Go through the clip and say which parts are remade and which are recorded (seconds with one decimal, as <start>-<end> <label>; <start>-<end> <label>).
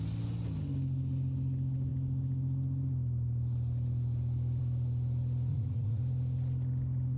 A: 0.0-5.5 recorded; 5.5-6.0 remade; 6.0-7.2 recorded